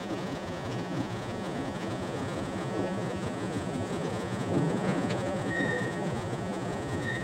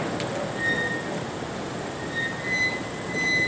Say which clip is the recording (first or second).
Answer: second